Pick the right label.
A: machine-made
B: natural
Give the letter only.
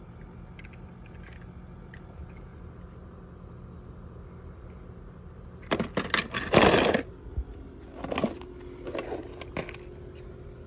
B